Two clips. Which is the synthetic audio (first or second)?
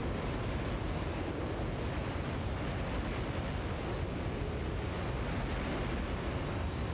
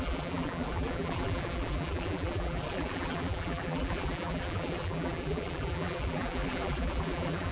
second